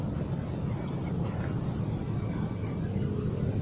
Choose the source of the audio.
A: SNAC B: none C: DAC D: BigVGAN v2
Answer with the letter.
B